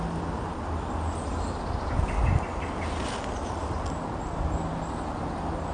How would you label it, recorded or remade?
recorded